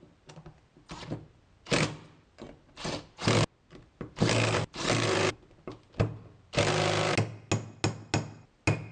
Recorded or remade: recorded